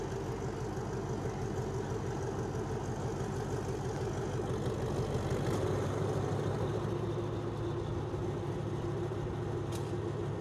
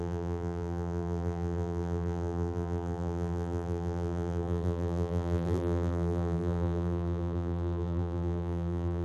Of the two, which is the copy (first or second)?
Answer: second